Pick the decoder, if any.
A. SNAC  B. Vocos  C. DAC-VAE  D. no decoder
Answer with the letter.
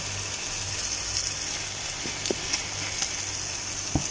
D